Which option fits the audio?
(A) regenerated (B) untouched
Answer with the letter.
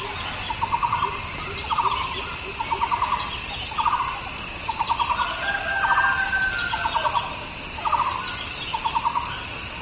B